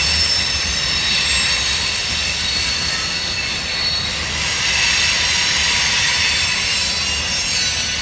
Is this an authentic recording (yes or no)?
yes